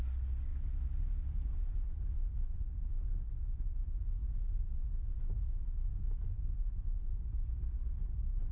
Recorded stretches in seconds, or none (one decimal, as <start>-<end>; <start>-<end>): 0.0-8.5